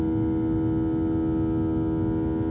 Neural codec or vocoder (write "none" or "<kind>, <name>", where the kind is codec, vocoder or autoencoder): none